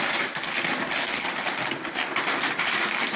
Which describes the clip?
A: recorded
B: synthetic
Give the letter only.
A